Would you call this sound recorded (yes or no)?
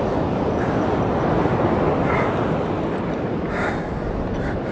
yes